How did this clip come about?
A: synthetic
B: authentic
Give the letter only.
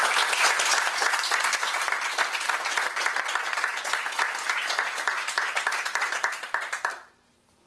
B